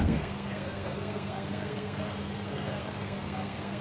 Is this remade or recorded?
remade